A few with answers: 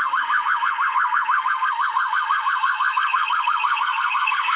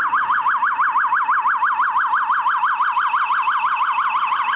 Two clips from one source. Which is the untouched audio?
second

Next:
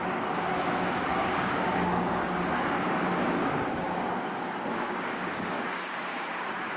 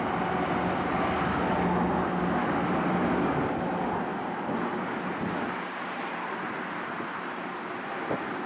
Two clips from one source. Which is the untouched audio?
second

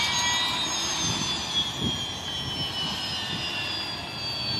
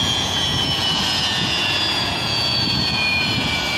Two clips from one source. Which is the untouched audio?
first